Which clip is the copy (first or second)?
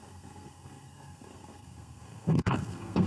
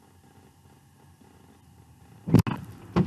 first